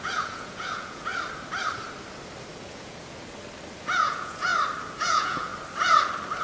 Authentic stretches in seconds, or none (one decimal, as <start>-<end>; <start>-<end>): 1.1-2.6; 3.2-3.8; 4.5-5.0; 5.5-6.4